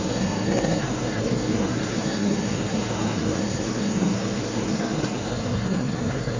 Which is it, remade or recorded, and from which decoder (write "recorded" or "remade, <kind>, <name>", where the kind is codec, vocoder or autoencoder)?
remade, codec, SNAC